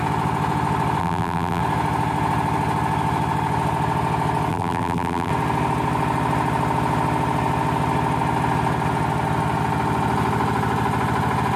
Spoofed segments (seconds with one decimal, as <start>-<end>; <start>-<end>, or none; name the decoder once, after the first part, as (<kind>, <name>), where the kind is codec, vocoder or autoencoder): 1.0-1.6 (vocoder, BigVGAN v2); 4.5-5.3